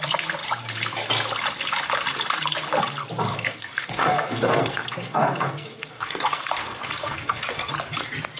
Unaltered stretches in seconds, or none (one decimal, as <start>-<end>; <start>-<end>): 0.0-3.3; 7.7-8.4